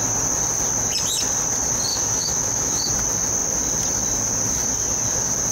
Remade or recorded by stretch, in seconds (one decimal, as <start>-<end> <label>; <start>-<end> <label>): 0.0-1.9 recorded; 1.9-2.8 remade; 2.8-5.5 recorded